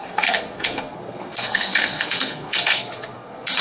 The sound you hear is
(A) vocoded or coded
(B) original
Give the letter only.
A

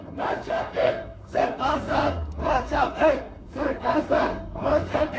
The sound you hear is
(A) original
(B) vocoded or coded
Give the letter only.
B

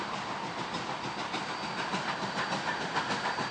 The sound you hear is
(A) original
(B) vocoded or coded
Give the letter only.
A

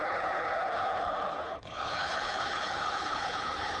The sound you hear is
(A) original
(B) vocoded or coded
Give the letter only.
B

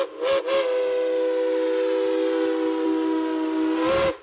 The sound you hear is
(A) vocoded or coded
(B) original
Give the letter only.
B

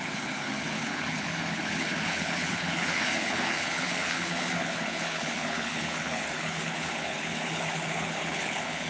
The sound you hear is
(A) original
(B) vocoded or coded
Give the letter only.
B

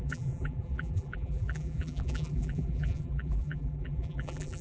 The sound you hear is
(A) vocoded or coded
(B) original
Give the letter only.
A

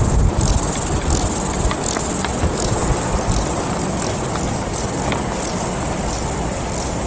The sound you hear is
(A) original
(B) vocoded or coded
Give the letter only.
A